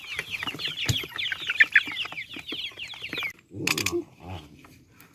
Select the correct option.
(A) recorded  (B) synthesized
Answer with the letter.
A